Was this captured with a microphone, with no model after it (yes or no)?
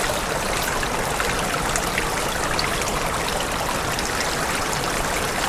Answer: yes